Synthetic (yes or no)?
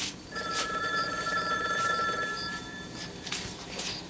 yes